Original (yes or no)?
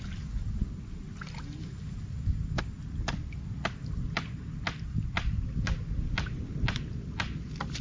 yes